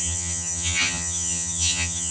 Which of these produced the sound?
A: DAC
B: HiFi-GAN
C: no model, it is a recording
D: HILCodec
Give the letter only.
B